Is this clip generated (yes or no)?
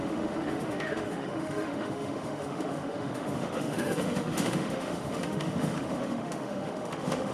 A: yes